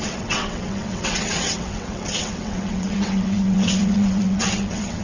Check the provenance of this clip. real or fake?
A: fake